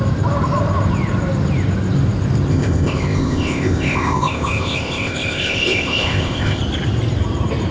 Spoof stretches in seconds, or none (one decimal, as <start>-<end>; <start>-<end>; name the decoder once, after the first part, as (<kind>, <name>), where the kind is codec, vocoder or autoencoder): 2.5-6.6 (codec, ZipCodec)